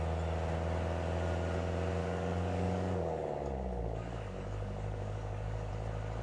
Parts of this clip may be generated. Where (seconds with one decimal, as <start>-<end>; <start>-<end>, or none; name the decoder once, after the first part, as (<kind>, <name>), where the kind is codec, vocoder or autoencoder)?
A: 2.0-5.7 (codec, DAC)